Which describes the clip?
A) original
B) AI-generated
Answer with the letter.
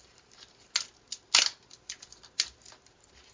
A